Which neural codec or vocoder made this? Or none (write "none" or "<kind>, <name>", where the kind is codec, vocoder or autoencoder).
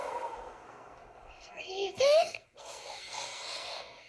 codec, SNAC